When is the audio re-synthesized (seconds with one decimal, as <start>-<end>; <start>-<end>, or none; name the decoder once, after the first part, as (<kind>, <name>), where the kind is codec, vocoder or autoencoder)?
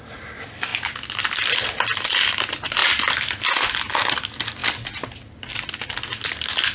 none